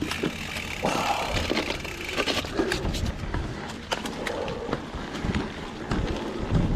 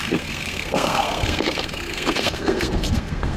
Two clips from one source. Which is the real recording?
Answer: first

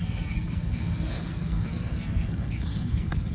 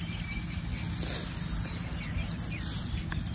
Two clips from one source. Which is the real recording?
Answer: second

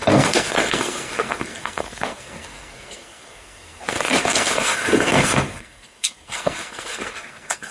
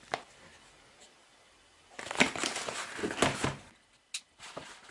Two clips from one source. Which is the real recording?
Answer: second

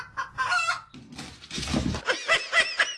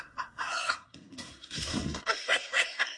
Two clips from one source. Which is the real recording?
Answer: first